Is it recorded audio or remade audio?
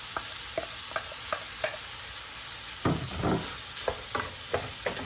recorded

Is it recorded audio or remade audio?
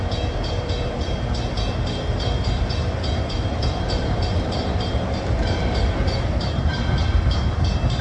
remade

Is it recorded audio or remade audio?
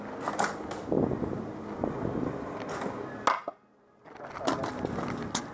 recorded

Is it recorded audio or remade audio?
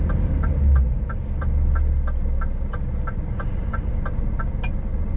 recorded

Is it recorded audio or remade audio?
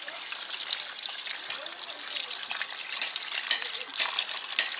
recorded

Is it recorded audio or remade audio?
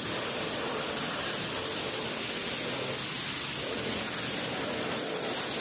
recorded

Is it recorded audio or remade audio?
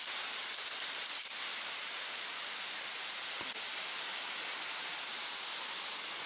recorded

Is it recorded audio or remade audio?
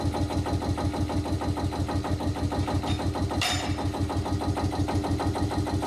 recorded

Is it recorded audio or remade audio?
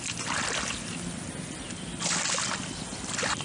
recorded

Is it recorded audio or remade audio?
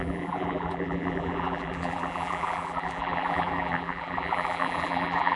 remade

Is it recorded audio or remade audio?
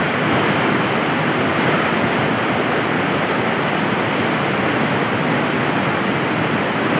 recorded